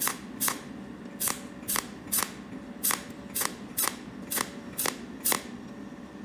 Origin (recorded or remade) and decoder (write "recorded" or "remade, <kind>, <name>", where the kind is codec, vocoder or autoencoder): recorded